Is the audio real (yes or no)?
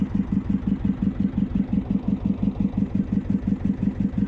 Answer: yes